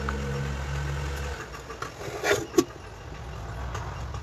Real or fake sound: real